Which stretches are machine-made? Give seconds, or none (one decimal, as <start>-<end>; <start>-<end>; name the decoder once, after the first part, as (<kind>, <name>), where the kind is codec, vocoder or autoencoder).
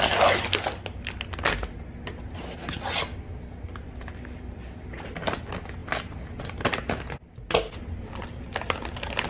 none